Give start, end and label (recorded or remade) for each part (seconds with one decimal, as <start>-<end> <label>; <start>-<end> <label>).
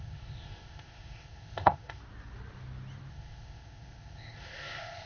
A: 0.0-2.0 remade; 2.0-3.1 recorded; 3.1-5.1 remade